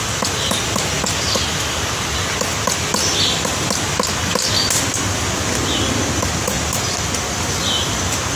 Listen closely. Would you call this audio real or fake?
real